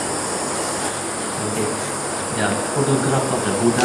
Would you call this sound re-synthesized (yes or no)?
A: no